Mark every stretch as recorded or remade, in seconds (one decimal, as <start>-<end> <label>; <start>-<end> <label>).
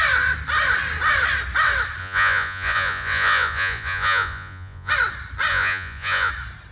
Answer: 0.0-2.0 recorded; 2.0-4.9 remade; 4.9-5.5 recorded; 5.5-6.3 remade; 6.3-6.7 recorded